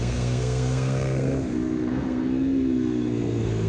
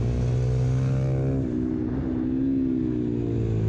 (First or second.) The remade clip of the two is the first